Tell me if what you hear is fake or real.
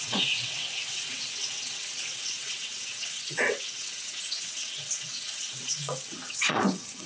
fake